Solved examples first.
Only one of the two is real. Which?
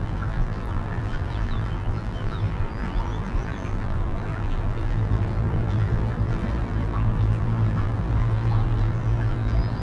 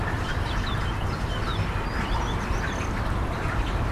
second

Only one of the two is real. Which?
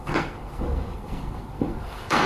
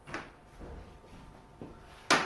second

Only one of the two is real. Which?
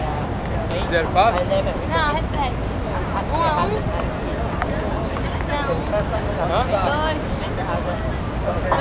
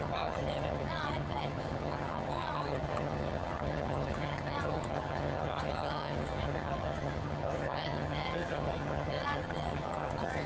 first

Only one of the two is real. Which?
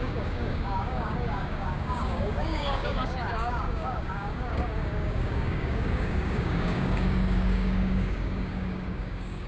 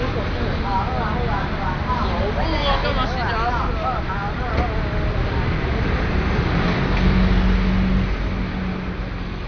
second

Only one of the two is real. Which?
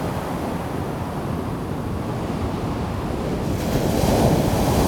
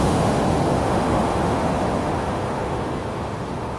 first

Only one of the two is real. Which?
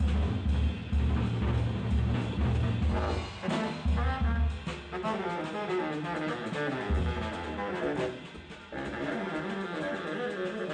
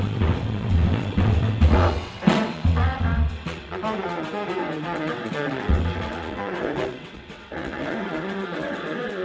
first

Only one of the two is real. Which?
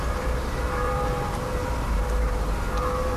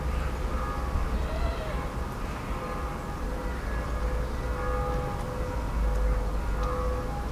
second